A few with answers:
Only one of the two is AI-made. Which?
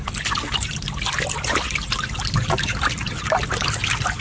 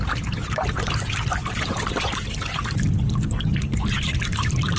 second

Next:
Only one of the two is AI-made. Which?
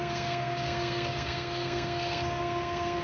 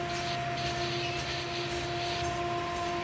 first